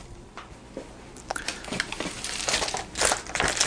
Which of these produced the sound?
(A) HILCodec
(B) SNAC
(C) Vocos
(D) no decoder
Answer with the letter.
D